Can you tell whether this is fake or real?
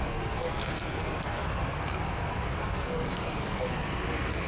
fake